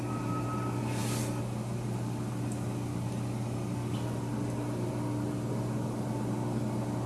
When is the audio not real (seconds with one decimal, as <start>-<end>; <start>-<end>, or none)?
none